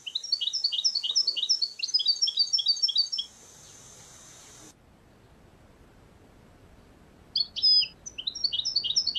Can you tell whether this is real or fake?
real